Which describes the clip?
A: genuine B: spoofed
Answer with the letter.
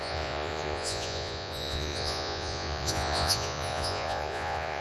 B